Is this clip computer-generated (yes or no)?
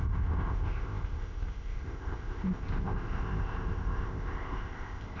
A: yes